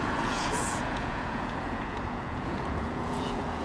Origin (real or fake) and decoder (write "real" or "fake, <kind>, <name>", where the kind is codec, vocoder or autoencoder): fake, vocoder, Vocos